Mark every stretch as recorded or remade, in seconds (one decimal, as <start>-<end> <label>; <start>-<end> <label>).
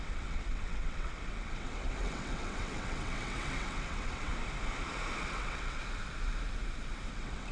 0.0-4.3 remade; 4.3-5.2 recorded; 5.2-5.8 remade; 5.8-7.1 recorded; 7.1-7.5 remade